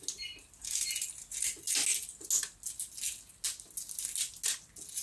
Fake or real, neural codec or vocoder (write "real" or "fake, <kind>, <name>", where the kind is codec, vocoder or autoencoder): real